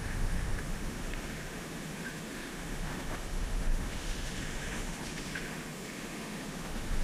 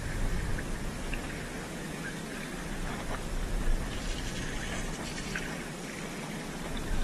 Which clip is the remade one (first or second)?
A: first